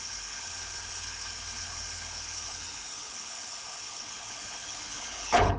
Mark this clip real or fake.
fake